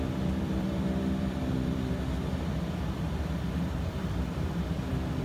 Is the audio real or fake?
fake